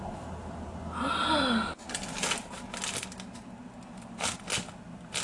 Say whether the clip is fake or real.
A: real